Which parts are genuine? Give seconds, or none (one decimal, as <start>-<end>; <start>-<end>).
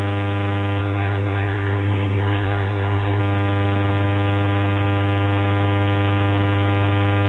0.0-0.8; 3.2-7.3